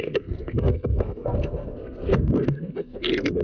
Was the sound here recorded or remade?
remade